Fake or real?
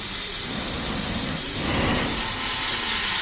real